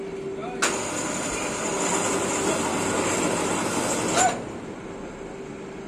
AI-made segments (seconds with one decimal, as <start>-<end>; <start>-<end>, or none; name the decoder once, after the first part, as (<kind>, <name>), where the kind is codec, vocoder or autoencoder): none